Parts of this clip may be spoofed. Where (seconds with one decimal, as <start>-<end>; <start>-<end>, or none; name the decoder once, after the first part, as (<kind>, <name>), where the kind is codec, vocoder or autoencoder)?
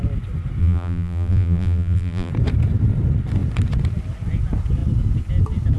0.6-2.3 (vocoder, BigVGAN v2)